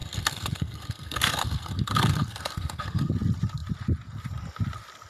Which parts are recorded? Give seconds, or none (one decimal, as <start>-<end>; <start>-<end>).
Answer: 3.1-5.1